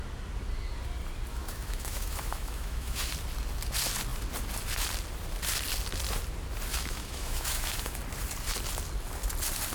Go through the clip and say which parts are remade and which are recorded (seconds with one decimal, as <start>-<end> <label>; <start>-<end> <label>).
0.0-1.3 recorded; 1.3-3.1 remade; 3.1-6.7 recorded; 6.7-8.0 remade; 8.0-9.7 recorded